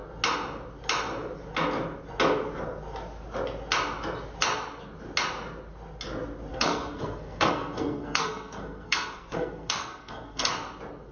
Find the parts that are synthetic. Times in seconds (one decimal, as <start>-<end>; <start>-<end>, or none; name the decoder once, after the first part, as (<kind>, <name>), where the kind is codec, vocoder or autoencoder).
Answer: 6.5-10.5 (codec, SNAC)

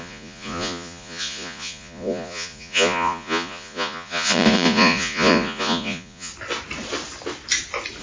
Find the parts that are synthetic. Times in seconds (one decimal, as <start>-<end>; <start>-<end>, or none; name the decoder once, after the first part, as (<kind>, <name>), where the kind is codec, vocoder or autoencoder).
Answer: 0.0-6.3 (vocoder, Vocos)